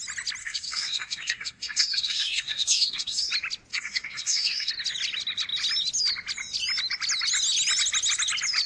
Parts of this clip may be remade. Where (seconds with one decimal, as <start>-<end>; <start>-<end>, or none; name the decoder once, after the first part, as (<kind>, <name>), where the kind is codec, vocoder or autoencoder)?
0.4-3.3 (codec, SNAC); 3.7-4.7